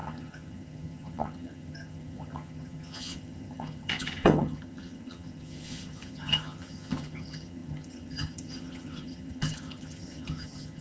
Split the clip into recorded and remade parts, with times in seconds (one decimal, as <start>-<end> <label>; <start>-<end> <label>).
0.0-10.8 remade